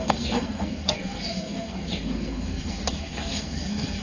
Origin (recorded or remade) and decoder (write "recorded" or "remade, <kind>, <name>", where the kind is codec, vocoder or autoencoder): remade, codec, SNAC